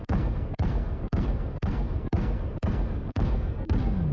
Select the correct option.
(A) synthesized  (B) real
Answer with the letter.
A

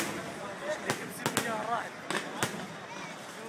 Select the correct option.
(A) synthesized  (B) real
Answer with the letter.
B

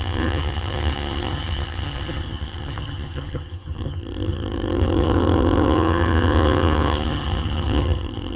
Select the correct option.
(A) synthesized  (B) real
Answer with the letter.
A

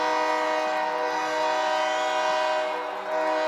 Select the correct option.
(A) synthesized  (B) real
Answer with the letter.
B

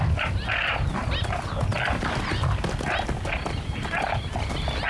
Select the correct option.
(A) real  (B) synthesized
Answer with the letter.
A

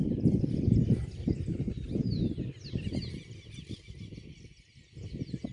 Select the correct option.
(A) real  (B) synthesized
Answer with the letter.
A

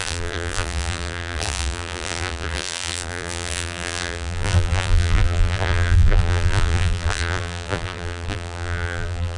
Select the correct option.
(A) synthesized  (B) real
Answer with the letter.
A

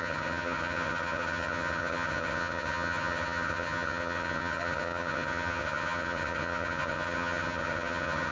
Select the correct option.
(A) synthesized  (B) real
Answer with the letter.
A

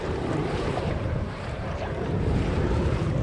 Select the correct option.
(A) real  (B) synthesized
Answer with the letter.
B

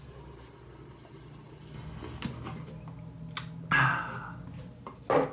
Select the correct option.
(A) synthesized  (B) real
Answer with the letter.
B